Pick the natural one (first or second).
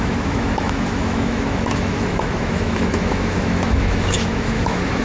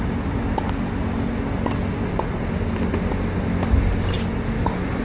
second